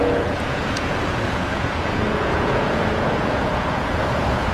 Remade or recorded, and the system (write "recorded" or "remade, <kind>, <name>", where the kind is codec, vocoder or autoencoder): remade, vocoder, Vocos